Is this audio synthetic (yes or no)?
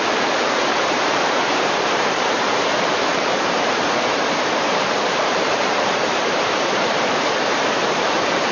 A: yes